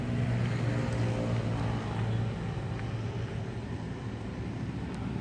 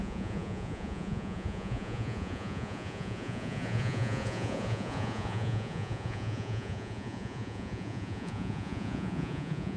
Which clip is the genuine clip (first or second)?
first